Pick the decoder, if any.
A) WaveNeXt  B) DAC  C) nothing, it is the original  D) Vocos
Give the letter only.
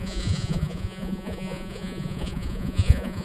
D